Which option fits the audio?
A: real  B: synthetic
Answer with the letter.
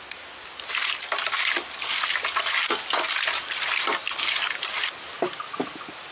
A